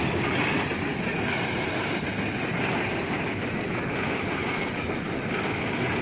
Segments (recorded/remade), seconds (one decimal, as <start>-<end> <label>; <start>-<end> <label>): 0.0-6.0 recorded